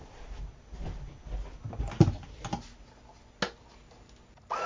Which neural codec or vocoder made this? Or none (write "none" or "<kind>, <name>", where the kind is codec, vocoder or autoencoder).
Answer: none